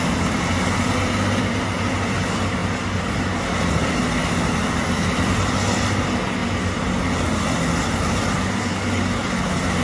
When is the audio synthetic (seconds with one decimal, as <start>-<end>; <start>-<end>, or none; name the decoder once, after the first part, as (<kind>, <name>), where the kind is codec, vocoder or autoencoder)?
none